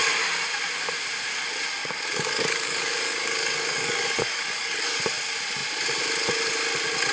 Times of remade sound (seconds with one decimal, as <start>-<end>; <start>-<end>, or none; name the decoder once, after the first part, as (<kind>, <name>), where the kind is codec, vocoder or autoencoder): 1.8-5.0 (codec, DAC)